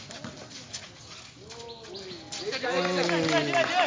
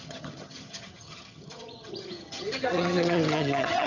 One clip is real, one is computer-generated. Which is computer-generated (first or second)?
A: second